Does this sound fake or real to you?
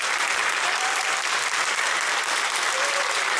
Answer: real